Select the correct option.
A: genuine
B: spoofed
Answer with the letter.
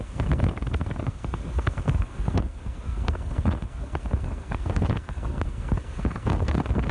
B